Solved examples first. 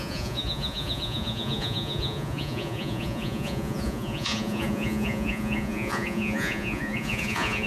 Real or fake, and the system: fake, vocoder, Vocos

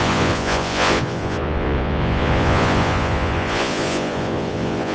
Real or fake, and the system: fake, vocoder, Vocos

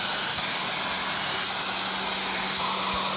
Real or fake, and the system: real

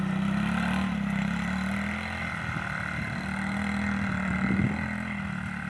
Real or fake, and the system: real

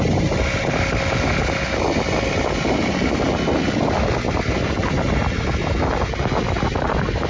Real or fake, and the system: real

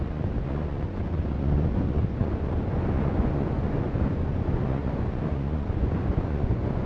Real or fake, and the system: fake, vocoder, Vocos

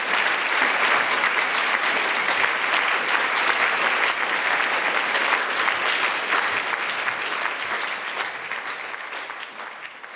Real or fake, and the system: real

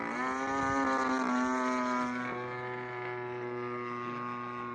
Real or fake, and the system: real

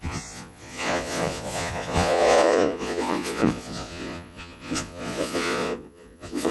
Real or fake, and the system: fake, vocoder, Vocos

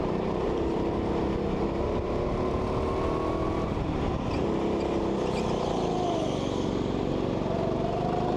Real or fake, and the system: real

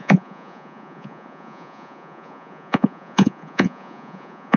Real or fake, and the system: fake, vocoder, Vocos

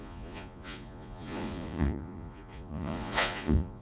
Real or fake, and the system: fake, vocoder, Vocos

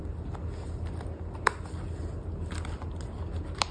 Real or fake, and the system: real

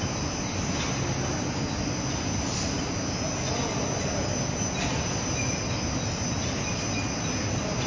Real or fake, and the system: real